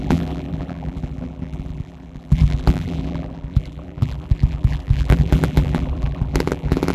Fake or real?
fake